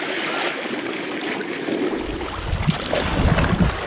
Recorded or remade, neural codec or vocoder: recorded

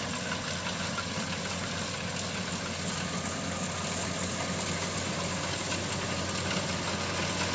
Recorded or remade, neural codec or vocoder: recorded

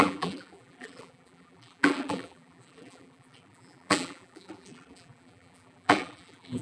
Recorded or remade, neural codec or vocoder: remade, vocoder, BigVGAN v2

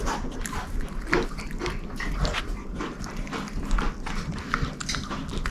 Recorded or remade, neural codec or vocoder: recorded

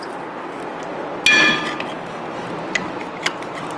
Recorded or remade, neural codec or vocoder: recorded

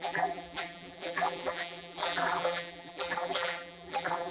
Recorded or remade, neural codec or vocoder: remade, vocoder, BigVGAN v2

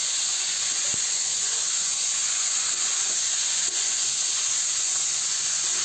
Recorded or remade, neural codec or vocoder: remade, vocoder, Vocos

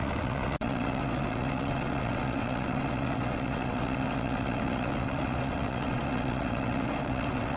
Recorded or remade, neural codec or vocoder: remade, vocoder, WaveNeXt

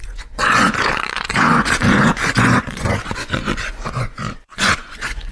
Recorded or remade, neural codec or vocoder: remade, vocoder, Vocos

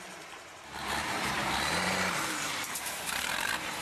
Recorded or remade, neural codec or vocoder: remade, vocoder, BigVGAN v2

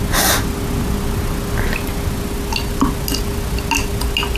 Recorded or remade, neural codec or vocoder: recorded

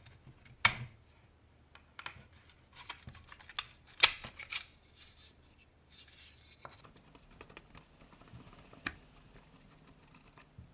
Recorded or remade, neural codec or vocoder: recorded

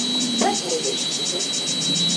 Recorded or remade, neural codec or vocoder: recorded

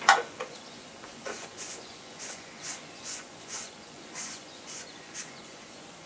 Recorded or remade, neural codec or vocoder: remade, vocoder, Vocos